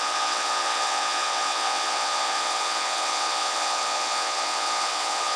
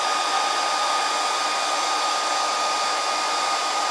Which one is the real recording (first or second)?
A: second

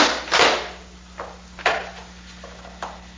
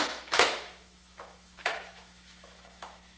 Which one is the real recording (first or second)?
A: first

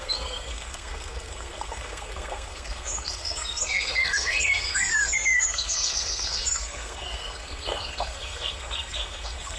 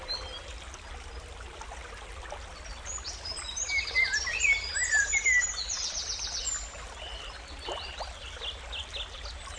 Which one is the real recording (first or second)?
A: second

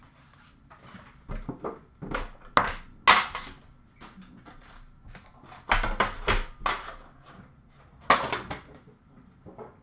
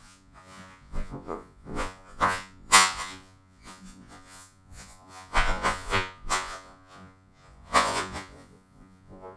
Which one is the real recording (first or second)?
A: first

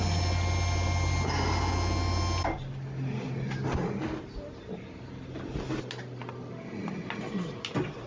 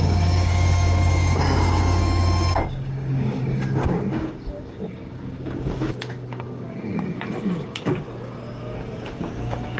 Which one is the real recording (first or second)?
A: first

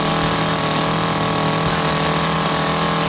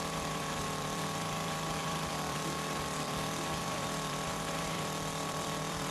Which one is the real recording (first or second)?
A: first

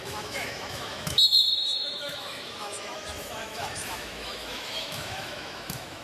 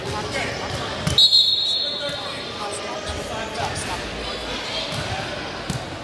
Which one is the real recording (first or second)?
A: second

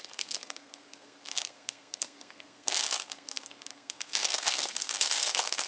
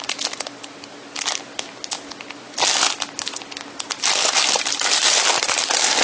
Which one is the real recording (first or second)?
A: second